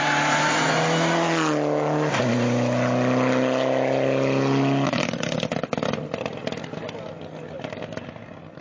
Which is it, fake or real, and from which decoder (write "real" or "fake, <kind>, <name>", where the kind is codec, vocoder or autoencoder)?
real